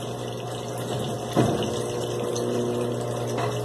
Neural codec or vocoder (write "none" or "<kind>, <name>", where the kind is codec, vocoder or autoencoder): none